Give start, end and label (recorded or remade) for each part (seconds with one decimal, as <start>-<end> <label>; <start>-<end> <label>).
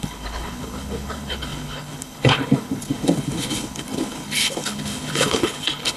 0.0-6.0 remade